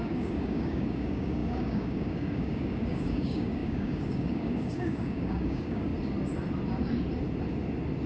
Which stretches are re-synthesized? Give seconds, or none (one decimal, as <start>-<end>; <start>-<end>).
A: 0.0-5.9